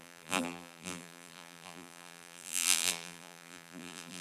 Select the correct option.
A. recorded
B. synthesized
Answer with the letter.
B